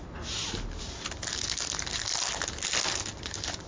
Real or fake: real